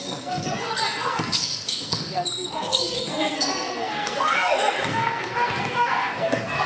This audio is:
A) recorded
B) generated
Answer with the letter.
B